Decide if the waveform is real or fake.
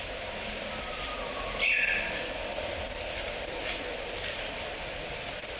fake